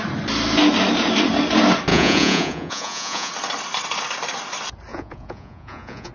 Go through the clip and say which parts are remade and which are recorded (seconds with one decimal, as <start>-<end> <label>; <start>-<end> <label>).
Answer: 0.0-1.9 recorded; 1.9-3.3 remade; 3.3-4.9 recorded; 4.9-6.1 remade